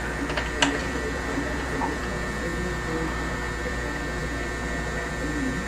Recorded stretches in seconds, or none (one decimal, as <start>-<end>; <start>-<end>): 0.0-0.8; 2.0-5.7